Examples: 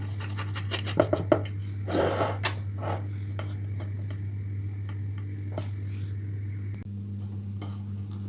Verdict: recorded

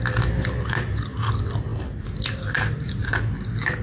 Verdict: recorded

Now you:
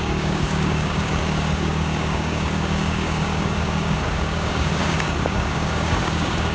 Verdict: remade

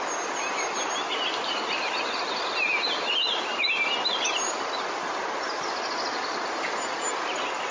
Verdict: recorded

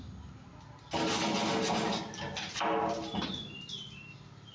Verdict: recorded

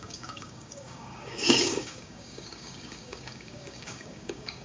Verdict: remade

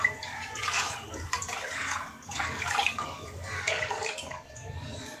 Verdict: remade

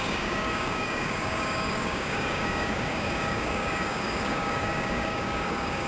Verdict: remade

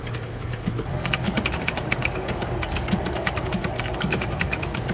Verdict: remade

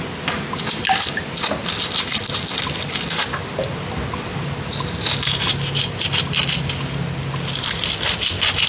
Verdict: recorded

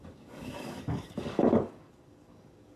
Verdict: remade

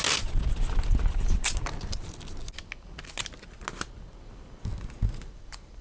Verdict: recorded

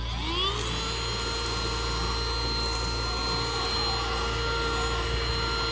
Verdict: recorded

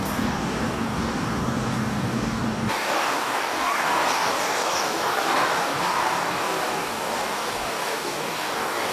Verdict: remade